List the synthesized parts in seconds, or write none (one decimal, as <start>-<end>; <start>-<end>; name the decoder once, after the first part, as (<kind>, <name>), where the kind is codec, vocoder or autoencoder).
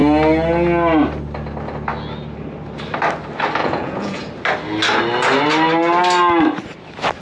3.6-4.2 (vocoder, Vocos)